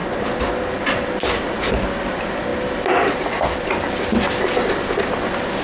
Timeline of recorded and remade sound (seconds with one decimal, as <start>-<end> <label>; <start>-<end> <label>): 0.0-5.6 recorded